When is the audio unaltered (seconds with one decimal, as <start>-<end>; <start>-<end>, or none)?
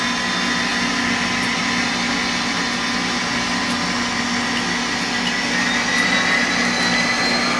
0.0-7.6